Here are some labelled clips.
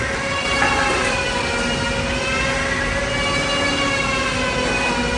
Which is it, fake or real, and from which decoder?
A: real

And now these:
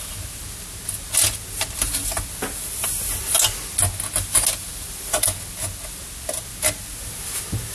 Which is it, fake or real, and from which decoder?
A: real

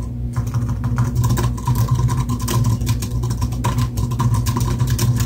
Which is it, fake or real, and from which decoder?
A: real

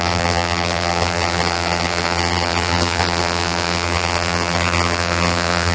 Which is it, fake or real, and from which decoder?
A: fake, vocoder, BigVGAN v2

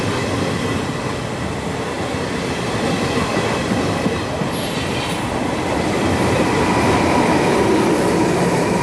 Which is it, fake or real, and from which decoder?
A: real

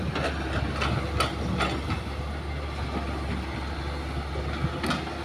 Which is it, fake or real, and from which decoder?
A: real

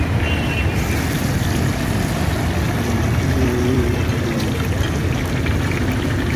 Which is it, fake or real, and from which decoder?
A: real